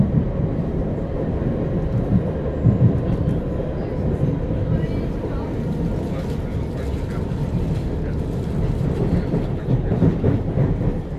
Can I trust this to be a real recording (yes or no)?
yes